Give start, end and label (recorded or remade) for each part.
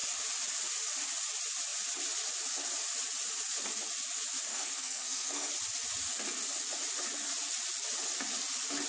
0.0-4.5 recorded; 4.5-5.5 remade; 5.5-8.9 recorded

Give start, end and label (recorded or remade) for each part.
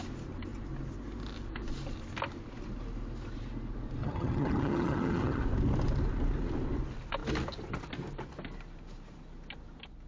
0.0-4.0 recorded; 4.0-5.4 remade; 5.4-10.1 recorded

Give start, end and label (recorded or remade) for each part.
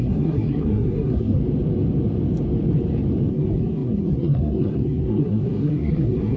0.0-1.4 remade; 1.4-3.3 recorded; 3.3-6.4 remade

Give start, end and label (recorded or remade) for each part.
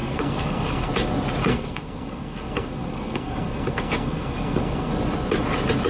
0.0-0.9 remade; 0.9-1.4 recorded; 1.4-4.9 remade; 4.9-5.9 recorded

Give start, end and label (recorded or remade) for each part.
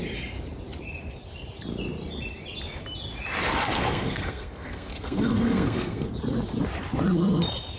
0.0-3.7 recorded; 3.7-6.1 remade; 6.1-7.8 recorded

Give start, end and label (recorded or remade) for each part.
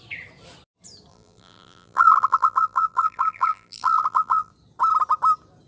0.0-1.1 recorded; 1.1-4.5 remade; 4.5-5.7 recorded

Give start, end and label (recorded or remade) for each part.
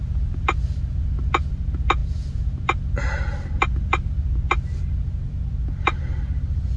0.0-6.8 recorded